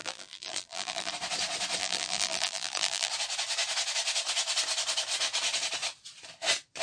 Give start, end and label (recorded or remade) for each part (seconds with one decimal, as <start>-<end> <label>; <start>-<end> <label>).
0.0-1.1 remade; 1.1-1.8 recorded; 1.8-3.1 remade; 3.1-6.8 recorded